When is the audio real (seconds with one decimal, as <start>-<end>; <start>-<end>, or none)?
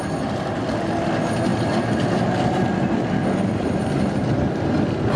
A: 0.0-5.2